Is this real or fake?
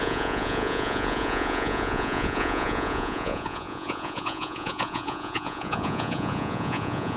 fake